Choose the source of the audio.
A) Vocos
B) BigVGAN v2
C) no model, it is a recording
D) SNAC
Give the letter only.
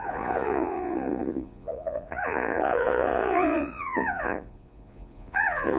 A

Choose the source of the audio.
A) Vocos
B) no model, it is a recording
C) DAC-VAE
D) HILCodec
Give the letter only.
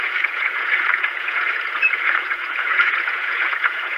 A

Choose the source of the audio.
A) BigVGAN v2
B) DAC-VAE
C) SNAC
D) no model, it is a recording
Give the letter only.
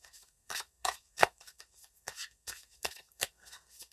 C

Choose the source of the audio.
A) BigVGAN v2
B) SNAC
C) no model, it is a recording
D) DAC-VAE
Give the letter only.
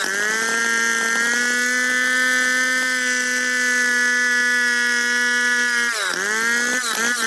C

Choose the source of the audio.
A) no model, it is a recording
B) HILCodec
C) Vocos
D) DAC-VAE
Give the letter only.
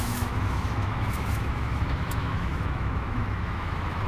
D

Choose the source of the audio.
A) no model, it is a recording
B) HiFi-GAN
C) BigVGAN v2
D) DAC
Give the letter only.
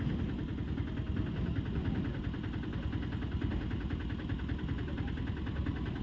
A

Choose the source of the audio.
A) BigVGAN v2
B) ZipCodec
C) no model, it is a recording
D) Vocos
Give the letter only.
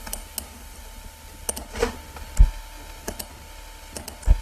C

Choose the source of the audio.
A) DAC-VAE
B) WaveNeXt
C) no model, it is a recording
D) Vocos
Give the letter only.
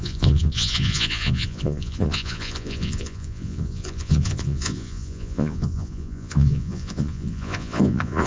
D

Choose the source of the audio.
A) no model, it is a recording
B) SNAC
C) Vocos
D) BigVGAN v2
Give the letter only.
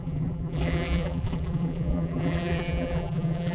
D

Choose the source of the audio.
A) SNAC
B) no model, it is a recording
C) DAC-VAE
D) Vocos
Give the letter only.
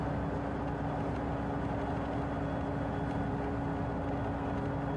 B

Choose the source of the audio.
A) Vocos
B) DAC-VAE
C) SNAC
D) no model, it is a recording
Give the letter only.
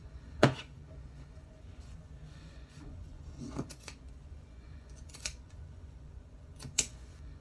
A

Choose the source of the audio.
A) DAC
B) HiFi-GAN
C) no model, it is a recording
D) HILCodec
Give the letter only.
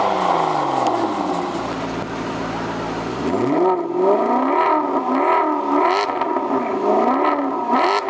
C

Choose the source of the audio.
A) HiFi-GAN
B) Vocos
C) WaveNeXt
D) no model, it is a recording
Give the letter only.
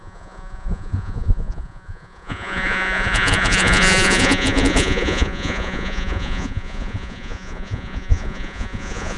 B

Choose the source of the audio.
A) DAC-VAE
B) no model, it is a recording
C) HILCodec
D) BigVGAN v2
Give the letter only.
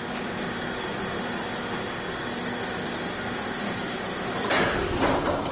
B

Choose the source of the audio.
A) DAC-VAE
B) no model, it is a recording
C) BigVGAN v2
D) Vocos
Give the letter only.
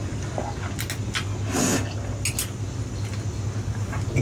B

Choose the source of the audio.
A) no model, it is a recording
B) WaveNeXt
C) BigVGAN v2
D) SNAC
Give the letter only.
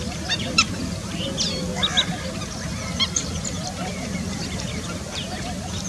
A